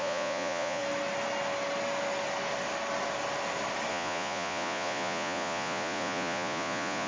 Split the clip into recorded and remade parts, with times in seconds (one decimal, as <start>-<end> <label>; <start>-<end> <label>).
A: 0.0-0.8 remade; 0.8-3.9 recorded; 3.9-7.1 remade